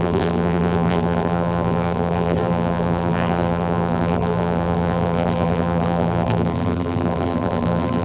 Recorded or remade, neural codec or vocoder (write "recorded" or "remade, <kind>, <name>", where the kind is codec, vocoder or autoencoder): remade, vocoder, BigVGAN v2